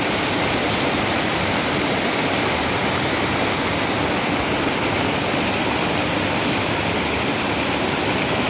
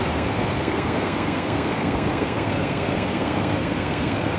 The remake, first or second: second